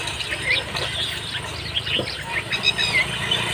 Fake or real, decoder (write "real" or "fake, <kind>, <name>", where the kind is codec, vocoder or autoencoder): real